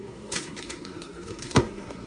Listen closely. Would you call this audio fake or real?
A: fake